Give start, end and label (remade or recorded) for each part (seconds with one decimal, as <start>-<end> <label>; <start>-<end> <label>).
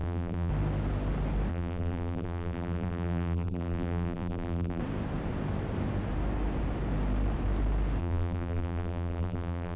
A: 0.0-0.5 remade; 0.5-1.5 recorded; 1.5-4.8 remade; 4.8-8.0 recorded; 8.0-9.8 remade